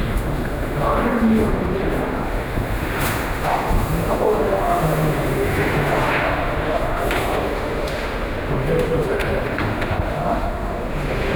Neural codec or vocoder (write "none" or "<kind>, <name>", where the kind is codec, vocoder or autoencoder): autoencoder, DAC-VAE